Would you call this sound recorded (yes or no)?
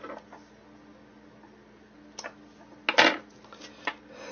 yes